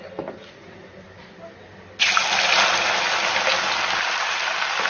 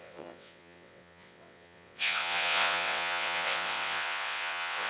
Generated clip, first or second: second